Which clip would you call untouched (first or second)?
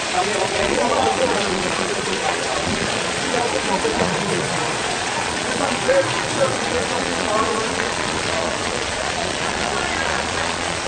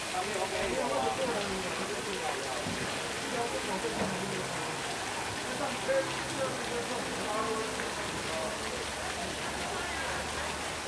second